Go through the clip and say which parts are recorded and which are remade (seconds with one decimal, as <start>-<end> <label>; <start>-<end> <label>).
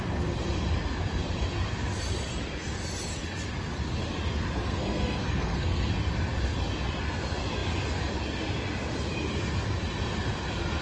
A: 0.0-4.6 recorded; 4.6-5.9 remade; 5.9-10.8 recorded